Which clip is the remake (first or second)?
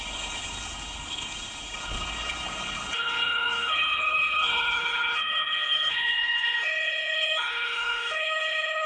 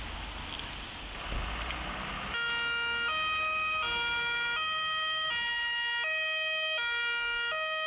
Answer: first